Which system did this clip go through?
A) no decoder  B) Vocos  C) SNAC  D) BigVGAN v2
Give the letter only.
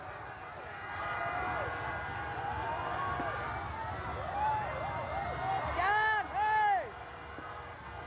A